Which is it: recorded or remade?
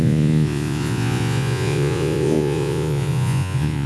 remade